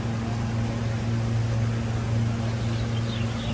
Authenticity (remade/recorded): recorded